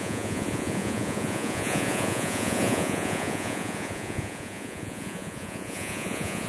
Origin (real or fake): fake